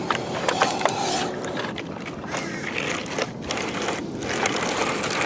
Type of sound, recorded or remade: recorded